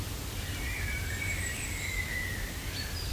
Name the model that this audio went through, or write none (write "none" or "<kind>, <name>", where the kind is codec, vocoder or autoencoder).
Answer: vocoder, BigVGAN v2